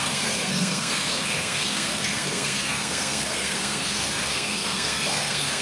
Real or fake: fake